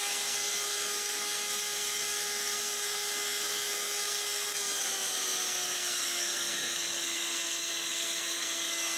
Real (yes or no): no